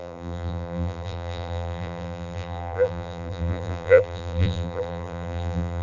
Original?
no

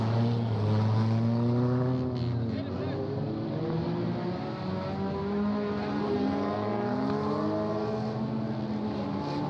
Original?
yes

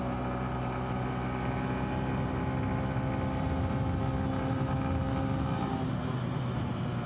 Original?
yes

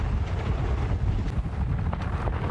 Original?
yes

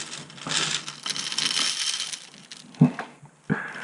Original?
yes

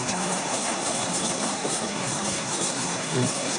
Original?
no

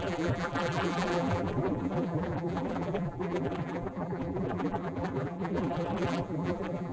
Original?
no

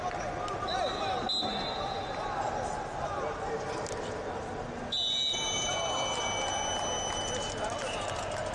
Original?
yes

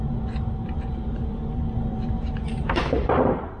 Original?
no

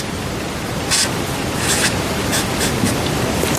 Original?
yes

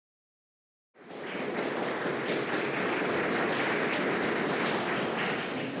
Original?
yes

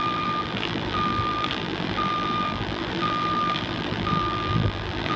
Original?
no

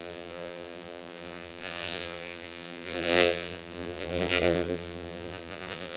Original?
no